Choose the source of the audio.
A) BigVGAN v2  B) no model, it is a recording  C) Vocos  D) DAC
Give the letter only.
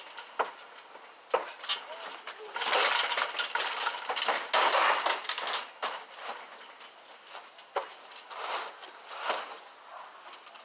B